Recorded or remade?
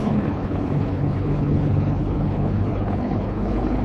remade